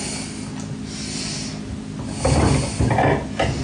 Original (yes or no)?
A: yes